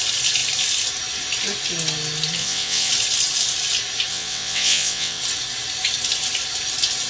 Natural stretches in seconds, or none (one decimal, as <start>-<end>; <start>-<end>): 0.0-2.4; 2.9-4.1; 5.2-7.1